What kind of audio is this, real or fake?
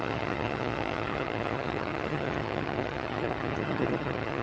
fake